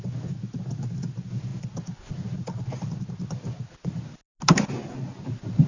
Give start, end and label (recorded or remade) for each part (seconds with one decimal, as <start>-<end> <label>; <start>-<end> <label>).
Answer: 0.0-5.7 recorded